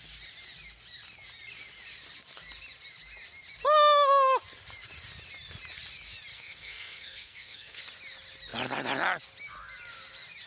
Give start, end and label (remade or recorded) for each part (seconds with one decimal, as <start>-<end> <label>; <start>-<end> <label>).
0.0-6.3 recorded; 6.3-7.8 remade; 7.8-10.5 recorded